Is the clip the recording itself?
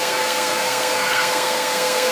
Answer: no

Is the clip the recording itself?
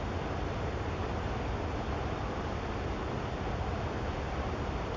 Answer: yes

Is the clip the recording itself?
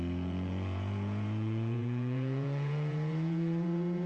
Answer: no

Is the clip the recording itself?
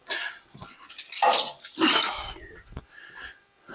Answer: yes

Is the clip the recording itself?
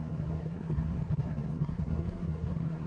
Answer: no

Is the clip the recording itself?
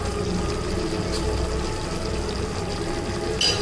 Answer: yes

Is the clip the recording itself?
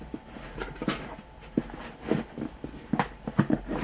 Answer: yes